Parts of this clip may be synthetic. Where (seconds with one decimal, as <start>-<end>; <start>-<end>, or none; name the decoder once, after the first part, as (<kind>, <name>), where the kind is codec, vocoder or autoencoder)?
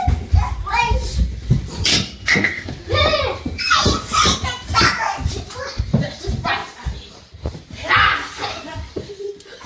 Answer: 1.9-2.7 (codec, SNAC)